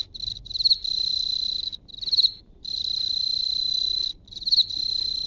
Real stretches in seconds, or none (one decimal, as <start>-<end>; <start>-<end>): 0.0-5.3